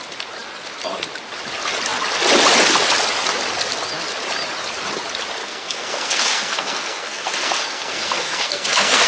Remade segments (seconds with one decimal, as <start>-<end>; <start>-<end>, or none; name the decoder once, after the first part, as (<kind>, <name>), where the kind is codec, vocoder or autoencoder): 5.4-9.1 (codec, SNAC)